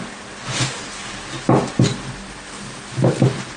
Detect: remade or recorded recorded